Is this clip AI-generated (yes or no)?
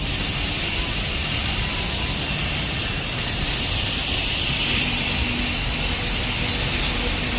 no